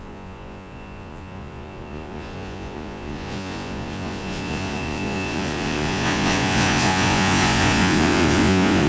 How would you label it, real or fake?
fake